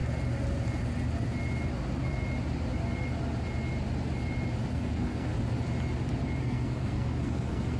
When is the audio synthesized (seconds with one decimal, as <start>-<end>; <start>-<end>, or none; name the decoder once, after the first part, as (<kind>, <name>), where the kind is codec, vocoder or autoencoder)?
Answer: 4.7-5.3 (codec, SNAC); 6.4-7.8